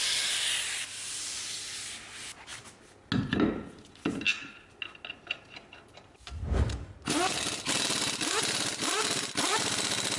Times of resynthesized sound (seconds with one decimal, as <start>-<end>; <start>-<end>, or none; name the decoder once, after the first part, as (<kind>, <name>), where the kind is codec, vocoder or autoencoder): none